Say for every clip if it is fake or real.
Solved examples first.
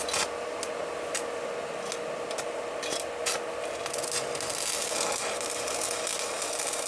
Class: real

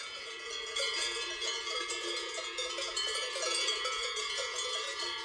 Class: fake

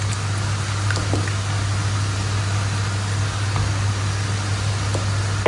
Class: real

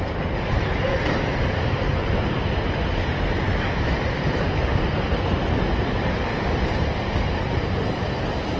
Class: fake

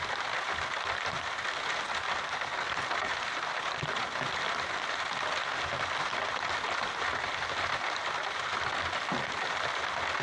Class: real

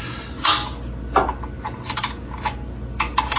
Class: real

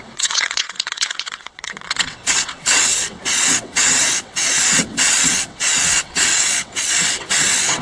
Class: fake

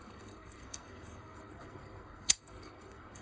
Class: fake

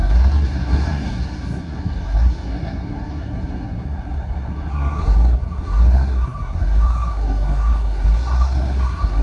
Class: fake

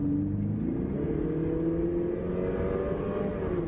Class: real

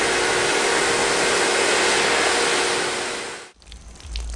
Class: real